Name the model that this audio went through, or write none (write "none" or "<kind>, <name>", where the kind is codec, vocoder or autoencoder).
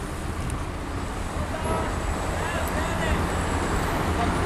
none